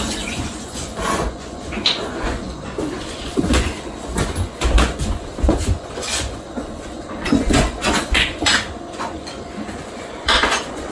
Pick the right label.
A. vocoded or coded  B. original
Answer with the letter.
A